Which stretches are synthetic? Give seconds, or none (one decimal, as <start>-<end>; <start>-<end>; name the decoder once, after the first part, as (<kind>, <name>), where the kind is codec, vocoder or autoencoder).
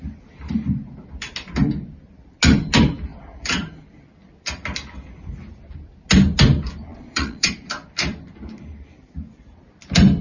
6.9-7.5 (vocoder, Vocos)